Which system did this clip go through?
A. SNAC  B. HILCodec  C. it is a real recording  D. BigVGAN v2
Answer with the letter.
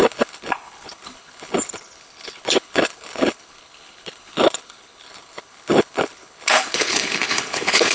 B